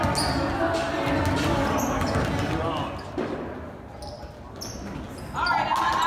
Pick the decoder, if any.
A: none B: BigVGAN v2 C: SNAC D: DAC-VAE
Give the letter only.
A